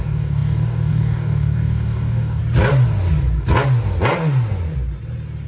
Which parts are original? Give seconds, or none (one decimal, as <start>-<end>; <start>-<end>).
2.4-5.5